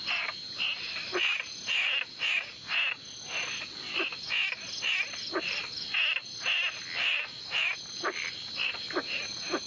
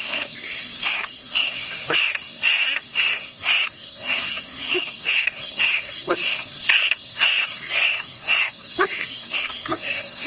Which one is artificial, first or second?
second